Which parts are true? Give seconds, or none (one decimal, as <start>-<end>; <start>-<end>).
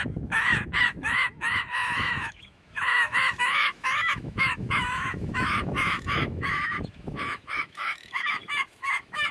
none